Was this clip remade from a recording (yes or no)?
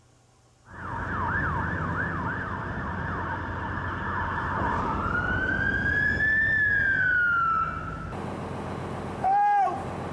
no